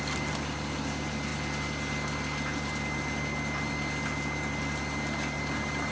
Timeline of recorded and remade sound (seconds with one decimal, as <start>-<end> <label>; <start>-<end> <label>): 0.0-5.9 recorded